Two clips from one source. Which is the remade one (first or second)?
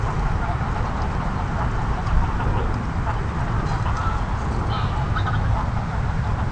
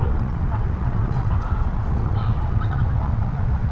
second